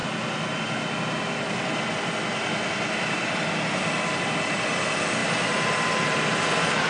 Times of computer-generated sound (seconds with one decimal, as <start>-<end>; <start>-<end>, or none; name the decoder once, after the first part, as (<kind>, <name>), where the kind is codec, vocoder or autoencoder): 5.2-6.2 (vocoder, BigVGAN v2)